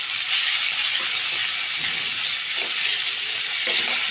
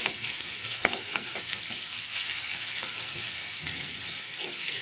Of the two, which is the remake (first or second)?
second